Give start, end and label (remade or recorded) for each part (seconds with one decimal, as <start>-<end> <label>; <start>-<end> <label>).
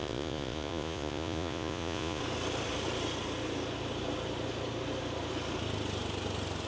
0.0-2.2 remade; 2.2-6.7 recorded